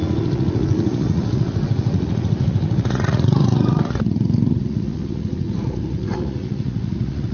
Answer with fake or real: fake